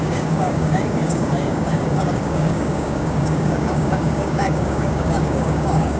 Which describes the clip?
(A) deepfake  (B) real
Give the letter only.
A